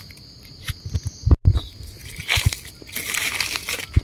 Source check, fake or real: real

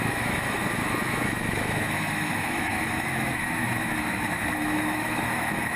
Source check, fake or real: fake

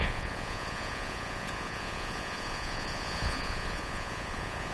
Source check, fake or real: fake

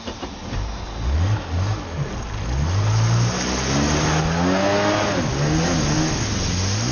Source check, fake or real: real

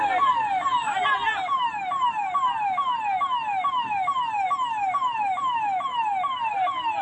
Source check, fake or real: real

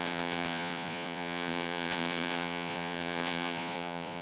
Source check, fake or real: fake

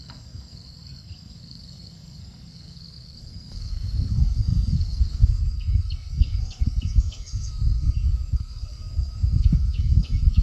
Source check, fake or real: fake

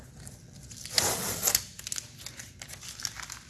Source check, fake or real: real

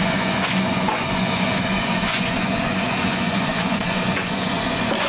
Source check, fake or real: fake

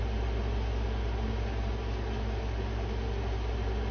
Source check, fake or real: real